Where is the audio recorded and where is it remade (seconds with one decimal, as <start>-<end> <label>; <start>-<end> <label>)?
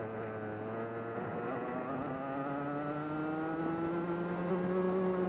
0.0-5.3 recorded